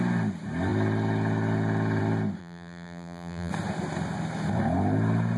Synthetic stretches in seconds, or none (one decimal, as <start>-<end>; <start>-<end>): 2.4-3.5